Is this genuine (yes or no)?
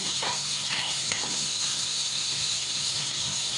no